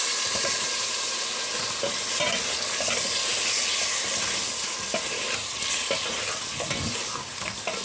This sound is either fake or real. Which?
real